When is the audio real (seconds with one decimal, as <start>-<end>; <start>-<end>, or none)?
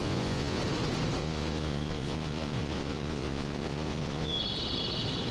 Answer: 0.6-1.2; 4.4-5.3